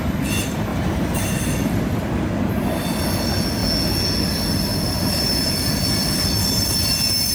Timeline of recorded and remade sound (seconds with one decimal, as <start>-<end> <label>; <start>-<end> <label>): 0.0-0.7 recorded; 0.7-1.3 remade; 1.3-4.7 recorded; 4.7-5.7 remade; 5.7-7.3 recorded

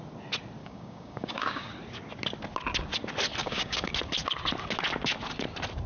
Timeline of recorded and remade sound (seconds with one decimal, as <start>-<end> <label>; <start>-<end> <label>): 0.0-0.6 recorded; 0.6-1.7 remade; 1.7-3.4 recorded; 3.4-3.9 remade; 3.9-5.9 recorded

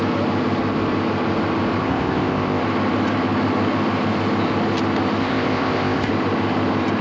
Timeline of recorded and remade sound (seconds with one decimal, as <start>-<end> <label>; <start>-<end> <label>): 0.0-1.8 recorded; 1.8-2.6 remade; 2.6-5.2 recorded; 5.2-6.1 remade; 6.1-7.0 recorded

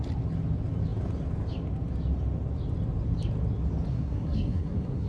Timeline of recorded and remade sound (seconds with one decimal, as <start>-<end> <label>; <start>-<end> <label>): 0.0-3.9 recorded; 3.9-5.1 remade

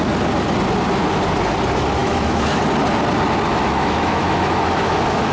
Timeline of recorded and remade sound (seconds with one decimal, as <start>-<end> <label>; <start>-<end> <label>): 0.0-2.0 recorded; 2.0-2.6 remade; 2.6-3.5 recorded; 3.5-5.3 remade

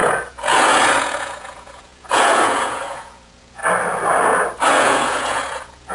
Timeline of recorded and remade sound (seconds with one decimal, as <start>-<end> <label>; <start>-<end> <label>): 0.0-3.6 remade; 3.6-4.7 recorded; 4.7-5.9 remade